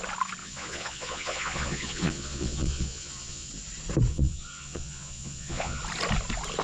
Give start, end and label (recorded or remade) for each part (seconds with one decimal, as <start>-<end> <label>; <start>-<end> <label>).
0.0-0.4 recorded; 0.4-3.5 remade; 3.5-4.1 recorded; 4.1-5.8 remade; 5.8-6.6 recorded

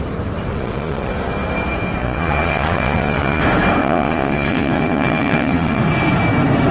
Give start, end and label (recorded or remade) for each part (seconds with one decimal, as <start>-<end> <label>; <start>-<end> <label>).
0.0-0.5 recorded; 0.5-1.1 remade; 1.1-2.0 recorded; 2.0-3.4 remade; 3.4-3.8 recorded; 3.8-5.8 remade; 5.8-6.7 recorded